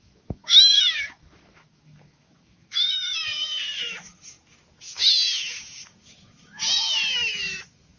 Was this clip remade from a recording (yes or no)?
yes